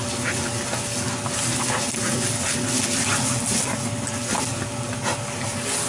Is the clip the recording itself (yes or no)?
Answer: yes